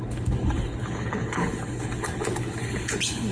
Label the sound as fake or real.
fake